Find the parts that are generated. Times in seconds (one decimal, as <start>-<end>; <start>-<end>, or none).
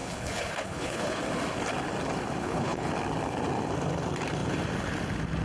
0.0-1.2; 2.4-2.9